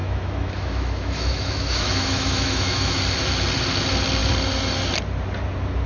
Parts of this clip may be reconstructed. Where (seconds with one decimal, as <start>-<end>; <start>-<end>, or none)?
0.0-3.0